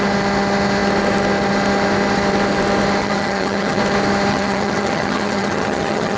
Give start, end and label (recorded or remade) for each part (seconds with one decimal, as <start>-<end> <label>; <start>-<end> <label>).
0.0-3.0 recorded; 3.0-3.8 remade; 3.8-4.3 recorded; 4.3-6.2 remade